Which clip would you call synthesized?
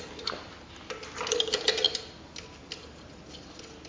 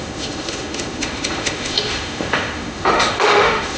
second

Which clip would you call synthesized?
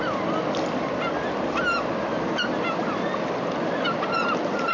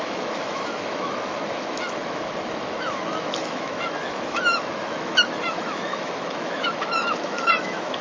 second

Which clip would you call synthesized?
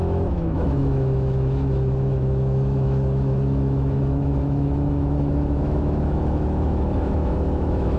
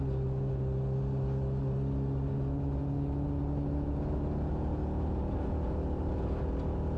first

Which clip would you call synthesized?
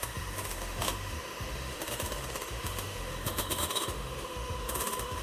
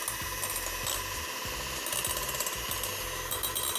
first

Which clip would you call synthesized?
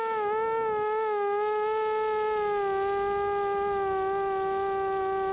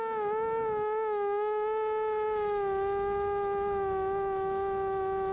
second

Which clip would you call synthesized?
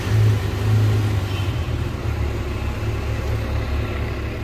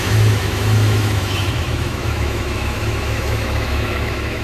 second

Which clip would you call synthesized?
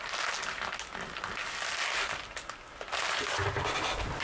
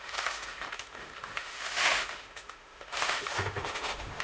second